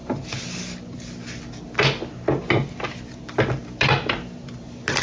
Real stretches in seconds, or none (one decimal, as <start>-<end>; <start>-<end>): 0.0-5.0